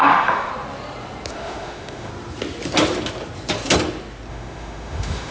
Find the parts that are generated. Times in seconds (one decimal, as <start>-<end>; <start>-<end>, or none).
0.0-0.5; 1.3-2.1; 4.3-5.3